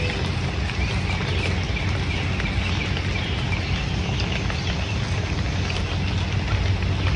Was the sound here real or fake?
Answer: real